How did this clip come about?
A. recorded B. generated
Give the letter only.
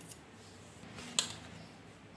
A